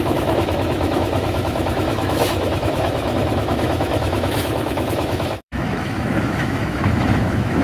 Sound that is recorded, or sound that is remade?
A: remade